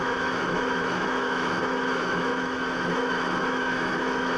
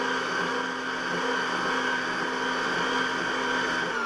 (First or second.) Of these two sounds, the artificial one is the first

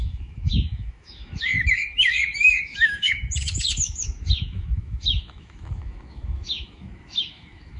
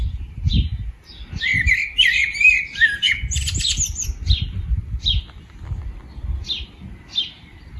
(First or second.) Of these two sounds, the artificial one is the first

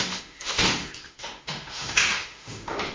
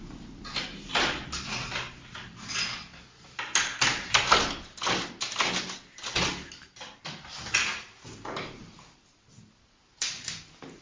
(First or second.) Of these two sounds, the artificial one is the first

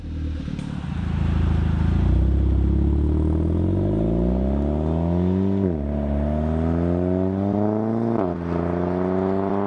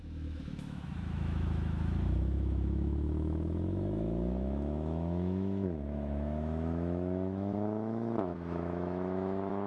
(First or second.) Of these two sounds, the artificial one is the second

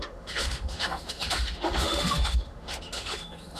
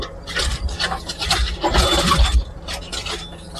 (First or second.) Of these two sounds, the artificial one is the first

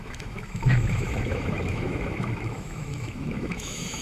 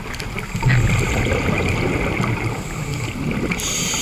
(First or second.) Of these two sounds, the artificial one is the first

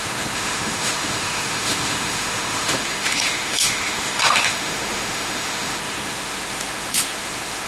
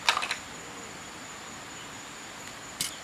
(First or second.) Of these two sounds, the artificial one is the first